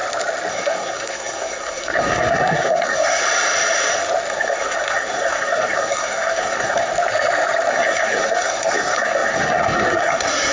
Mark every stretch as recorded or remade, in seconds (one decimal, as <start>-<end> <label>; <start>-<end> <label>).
0.0-0.5 recorded; 0.5-3.2 remade; 3.2-4.3 recorded; 4.3-6.9 remade; 6.9-7.7 recorded; 7.7-10.5 remade